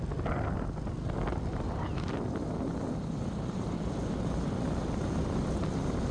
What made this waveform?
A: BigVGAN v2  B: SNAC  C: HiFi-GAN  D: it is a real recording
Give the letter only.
D